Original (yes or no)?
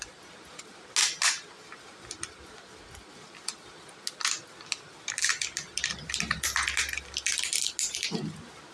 yes